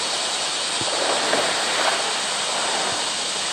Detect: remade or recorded recorded